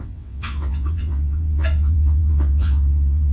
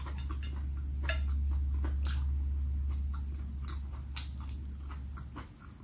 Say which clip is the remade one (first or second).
first